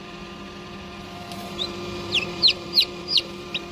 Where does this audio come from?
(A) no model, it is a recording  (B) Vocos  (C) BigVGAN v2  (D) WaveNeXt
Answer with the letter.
C